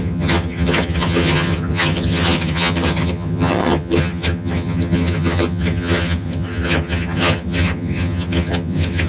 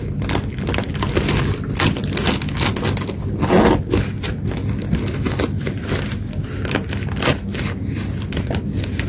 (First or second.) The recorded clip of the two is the second